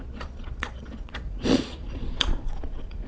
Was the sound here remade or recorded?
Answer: remade